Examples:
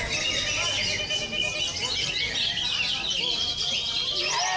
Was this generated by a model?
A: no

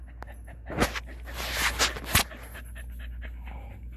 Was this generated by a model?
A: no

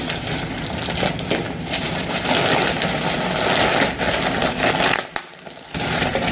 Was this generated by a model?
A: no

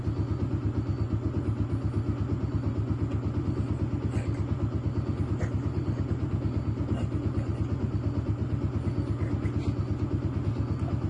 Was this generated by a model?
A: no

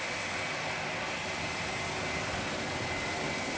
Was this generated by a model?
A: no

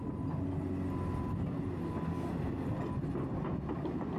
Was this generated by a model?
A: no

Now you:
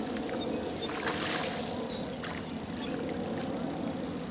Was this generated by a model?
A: no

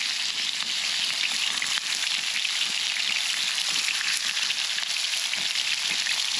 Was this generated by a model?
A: no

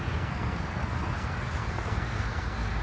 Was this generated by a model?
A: yes